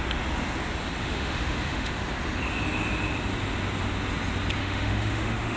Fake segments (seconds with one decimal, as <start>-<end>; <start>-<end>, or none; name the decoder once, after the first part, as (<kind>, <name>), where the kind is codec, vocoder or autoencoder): 1.0-1.9 (autoencoder, DAC-VAE); 4.6-5.6